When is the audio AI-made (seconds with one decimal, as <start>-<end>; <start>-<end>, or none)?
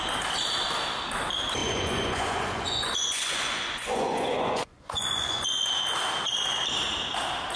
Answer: 1.6-5.8